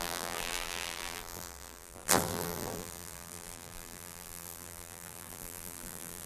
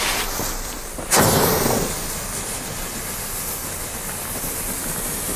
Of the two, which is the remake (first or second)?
first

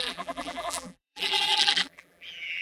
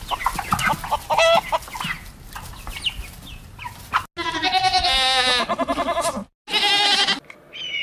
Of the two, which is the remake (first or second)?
first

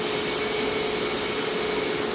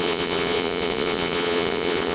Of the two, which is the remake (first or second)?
second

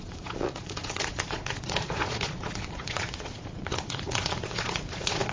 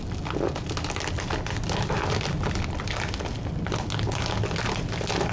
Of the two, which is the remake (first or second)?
first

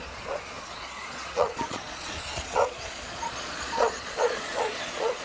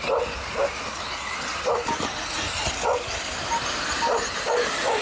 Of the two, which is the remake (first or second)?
first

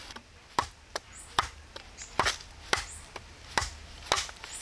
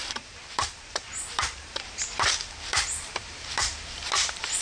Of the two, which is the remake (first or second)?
second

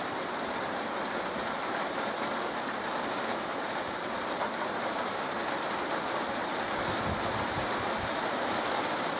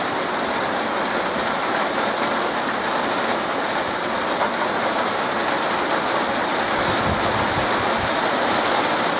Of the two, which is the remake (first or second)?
first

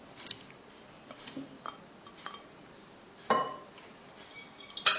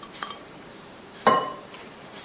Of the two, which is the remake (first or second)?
second